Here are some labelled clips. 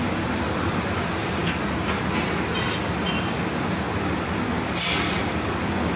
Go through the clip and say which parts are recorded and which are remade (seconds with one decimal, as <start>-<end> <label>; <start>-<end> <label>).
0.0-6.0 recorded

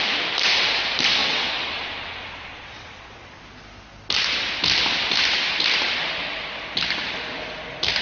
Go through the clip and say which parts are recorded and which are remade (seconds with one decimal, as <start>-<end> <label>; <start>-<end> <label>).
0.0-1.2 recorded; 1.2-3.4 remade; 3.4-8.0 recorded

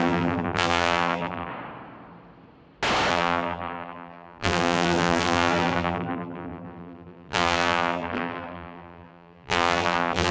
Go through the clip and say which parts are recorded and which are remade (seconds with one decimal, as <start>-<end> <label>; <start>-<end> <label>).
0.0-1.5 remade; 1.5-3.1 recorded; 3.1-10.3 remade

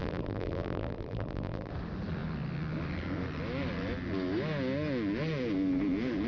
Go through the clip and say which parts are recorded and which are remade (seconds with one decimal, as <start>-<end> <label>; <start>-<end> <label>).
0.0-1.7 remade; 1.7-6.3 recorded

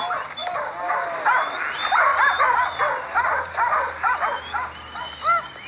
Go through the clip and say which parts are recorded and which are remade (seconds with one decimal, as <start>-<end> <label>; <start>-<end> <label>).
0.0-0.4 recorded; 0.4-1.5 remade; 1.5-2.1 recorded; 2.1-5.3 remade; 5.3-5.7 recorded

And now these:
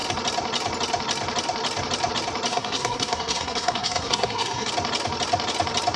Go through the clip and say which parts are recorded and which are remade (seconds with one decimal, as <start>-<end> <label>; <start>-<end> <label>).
0.0-2.5 recorded; 2.5-4.7 remade; 4.7-6.0 recorded